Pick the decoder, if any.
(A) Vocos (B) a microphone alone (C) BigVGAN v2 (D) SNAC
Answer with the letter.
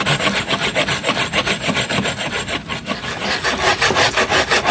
B